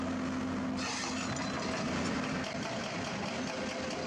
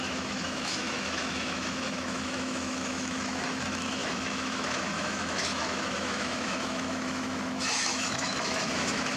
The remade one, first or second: second